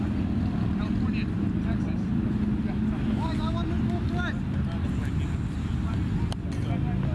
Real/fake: real